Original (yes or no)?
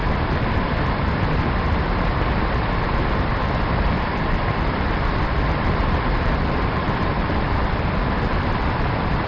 no